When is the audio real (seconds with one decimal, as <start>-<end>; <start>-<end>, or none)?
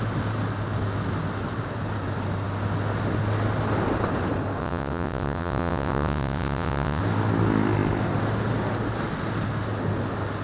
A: 0.0-4.6; 7.0-10.4